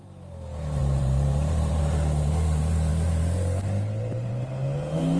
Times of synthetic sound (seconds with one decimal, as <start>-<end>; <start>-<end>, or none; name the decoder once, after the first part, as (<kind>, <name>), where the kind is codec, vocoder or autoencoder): 0.8-1.8 (vocoder, BigVGAN v2)